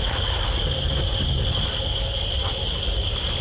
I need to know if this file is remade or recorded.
recorded